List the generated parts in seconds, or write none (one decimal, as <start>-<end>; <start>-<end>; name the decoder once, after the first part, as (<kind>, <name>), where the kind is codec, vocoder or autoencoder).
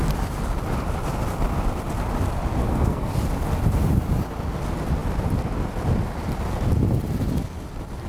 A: 2.6-3.1 (codec, SNAC)